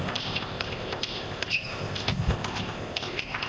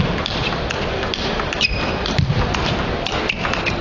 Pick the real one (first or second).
second